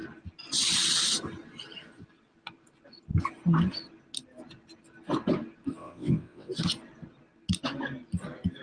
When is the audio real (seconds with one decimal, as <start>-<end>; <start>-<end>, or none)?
0.0-5.8; 6.5-8.6